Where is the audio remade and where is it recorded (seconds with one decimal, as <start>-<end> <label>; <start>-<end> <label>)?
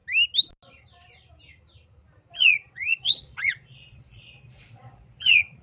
0.0-2.3 recorded; 2.3-5.6 remade